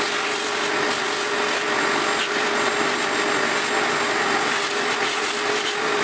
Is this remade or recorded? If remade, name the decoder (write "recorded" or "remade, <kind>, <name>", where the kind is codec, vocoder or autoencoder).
recorded